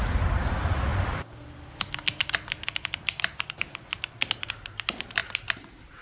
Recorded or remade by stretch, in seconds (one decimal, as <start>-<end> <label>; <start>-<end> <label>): 0.0-6.0 recorded